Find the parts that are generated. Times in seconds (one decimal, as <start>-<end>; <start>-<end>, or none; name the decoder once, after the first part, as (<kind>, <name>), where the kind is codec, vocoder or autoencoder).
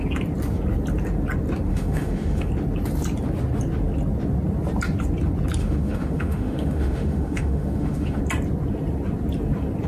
1.7-2.5 (autoencoder, DAC-VAE); 5.6-8.2